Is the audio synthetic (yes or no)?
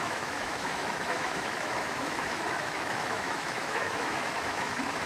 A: yes